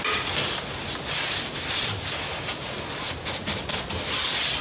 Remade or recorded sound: recorded